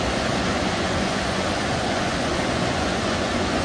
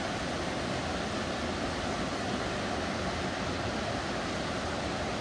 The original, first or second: second